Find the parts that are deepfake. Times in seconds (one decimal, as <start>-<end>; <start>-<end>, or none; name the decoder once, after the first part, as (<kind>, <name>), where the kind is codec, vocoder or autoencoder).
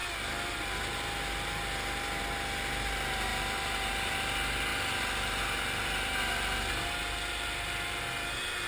none